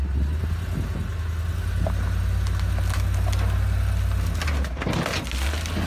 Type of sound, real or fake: real